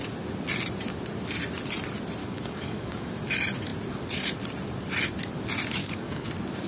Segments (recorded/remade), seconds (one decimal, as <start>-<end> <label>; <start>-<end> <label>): 0.0-2.2 recorded; 2.2-3.1 remade; 3.1-5.8 recorded; 5.8-6.3 remade; 6.3-6.7 recorded